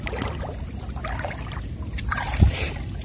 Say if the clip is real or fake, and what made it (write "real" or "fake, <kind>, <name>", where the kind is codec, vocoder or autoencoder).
real